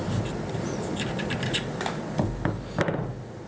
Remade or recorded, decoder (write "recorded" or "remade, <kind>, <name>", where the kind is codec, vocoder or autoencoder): recorded